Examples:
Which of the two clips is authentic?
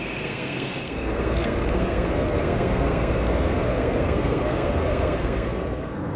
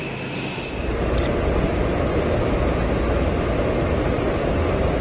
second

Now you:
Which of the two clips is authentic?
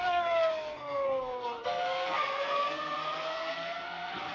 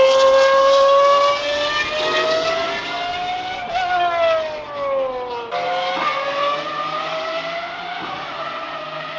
second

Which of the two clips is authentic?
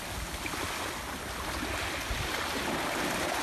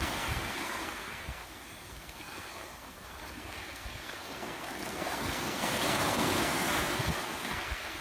first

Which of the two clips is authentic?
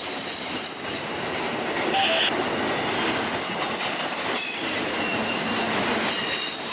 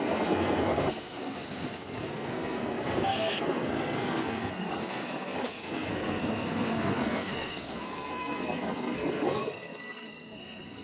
first